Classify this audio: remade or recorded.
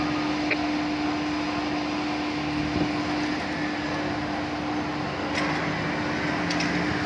recorded